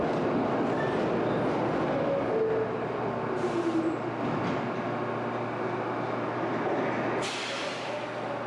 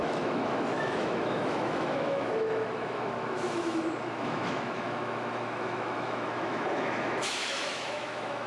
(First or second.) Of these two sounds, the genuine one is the first